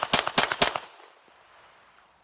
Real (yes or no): yes